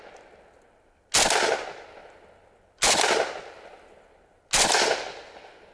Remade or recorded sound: recorded